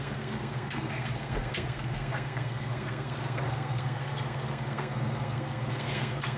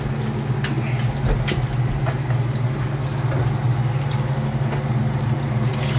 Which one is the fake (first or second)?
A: first